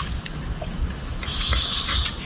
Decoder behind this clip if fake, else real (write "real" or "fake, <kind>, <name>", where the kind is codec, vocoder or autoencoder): real